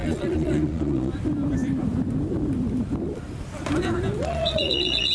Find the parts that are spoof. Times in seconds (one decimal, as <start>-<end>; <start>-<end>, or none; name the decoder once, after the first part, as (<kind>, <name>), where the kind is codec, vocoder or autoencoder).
0.0-1.1 (vocoder, Vocos); 4.2-5.1